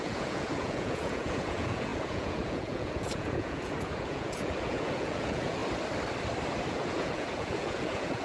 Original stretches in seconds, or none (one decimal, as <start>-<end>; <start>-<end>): 5.6-6.7